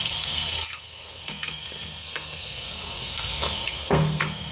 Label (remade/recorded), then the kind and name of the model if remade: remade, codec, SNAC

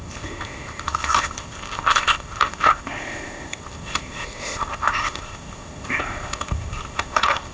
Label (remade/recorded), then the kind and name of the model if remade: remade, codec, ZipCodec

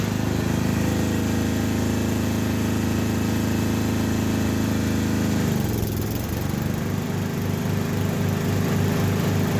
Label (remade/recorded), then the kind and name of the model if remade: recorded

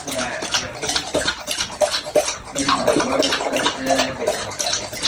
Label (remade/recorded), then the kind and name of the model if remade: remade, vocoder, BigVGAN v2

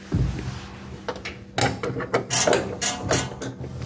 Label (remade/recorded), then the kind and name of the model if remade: recorded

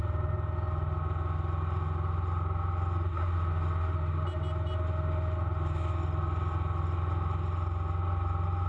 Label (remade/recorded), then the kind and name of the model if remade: recorded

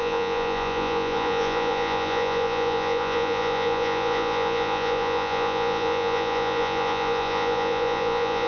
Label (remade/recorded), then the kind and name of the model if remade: remade, vocoder, Vocos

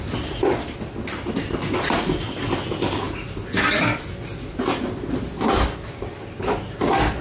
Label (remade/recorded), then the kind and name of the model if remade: recorded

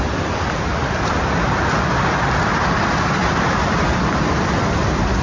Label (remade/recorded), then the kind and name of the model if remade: remade, vocoder, BigVGAN v2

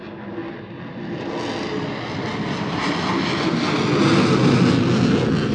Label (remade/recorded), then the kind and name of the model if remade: recorded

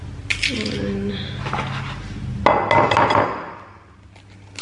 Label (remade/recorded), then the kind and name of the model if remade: recorded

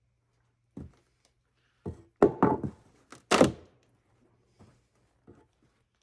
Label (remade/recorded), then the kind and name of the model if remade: recorded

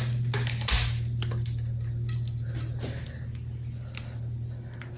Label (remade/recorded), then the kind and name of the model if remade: recorded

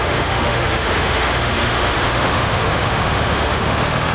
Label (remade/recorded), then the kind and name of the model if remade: remade, autoencoder, DAC-VAE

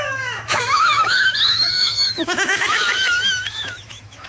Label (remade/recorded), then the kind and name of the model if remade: remade, autoencoder, DAC-VAE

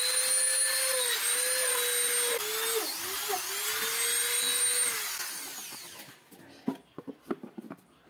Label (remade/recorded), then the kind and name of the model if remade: recorded